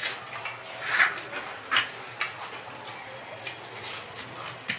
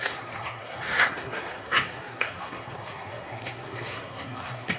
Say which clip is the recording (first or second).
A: first